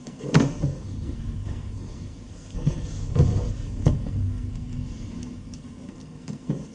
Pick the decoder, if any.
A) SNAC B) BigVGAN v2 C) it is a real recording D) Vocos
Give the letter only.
A